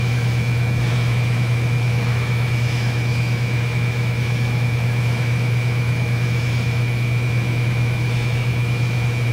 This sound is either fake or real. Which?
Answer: fake